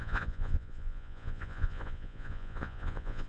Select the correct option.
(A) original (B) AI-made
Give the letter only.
B